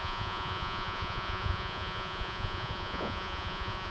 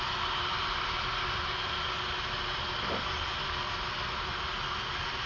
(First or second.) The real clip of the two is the second